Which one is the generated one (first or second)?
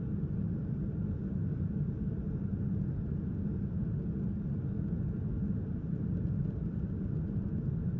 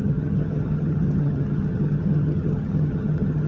second